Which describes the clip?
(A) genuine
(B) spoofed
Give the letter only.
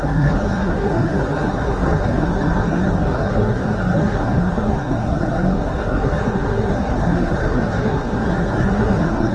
B